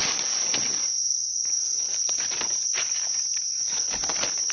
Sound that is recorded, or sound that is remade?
recorded